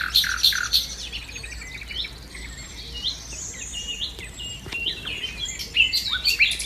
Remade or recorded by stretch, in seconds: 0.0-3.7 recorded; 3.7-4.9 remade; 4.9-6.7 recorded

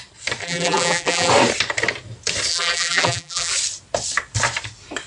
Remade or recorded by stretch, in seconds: 0.0-0.4 recorded; 0.4-1.3 remade; 1.3-2.5 recorded; 2.5-3.5 remade; 3.5-5.1 recorded

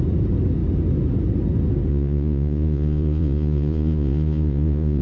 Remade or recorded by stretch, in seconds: 0.0-1.9 recorded; 1.9-5.0 remade